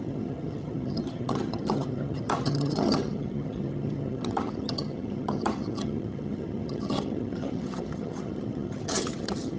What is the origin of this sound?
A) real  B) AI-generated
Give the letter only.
B